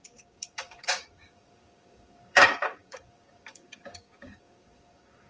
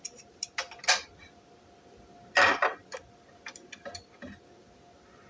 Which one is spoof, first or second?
first